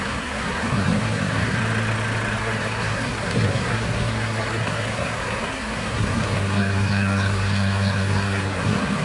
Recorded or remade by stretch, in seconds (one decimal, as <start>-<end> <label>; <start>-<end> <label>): 0.0-1.6 remade; 1.6-2.4 recorded; 2.4-9.0 remade